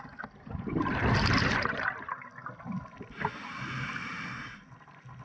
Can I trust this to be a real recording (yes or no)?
yes